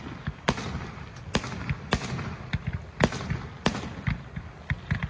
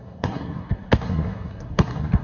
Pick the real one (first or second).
first